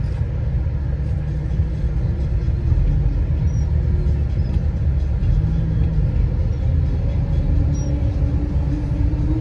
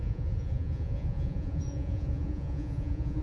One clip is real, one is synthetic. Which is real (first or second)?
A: first